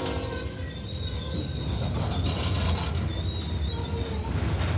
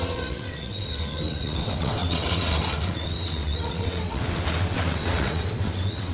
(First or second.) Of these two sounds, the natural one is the first